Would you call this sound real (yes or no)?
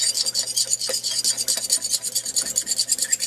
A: yes